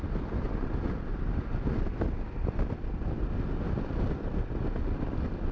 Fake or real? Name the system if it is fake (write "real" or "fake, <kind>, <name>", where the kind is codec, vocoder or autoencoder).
real